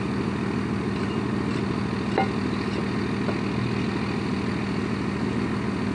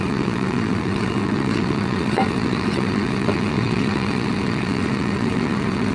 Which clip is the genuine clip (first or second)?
first